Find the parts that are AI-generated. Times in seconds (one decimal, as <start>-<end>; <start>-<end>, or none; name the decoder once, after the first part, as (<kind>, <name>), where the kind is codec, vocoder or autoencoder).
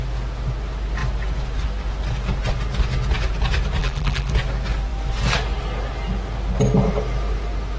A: 3.8-4.3 (vocoder, BigVGAN v2)